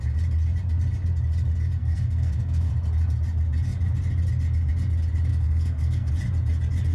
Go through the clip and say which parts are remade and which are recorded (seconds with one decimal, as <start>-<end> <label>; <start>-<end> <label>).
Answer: 0.0-1.8 recorded; 1.8-2.7 remade; 2.7-5.3 recorded; 5.3-6.1 remade; 6.1-6.9 recorded